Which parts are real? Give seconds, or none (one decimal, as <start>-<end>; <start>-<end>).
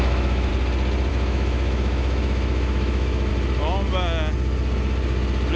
0.5-1.1; 3.3-5.6